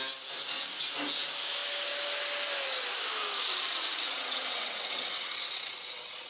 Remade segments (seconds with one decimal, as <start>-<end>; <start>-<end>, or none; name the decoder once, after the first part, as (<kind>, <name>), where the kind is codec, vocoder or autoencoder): 3.7-6.3 (vocoder, WaveNeXt)